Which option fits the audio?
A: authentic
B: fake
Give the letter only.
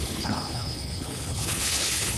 B